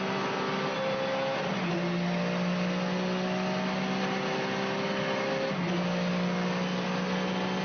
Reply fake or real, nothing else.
real